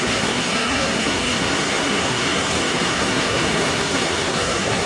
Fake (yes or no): yes